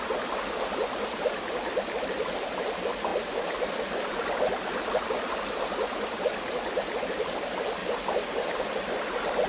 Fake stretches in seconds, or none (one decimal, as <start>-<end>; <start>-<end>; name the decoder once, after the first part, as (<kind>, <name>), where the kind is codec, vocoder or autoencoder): 3.1-4.9 (vocoder, BigVGAN v2); 7.8-8.6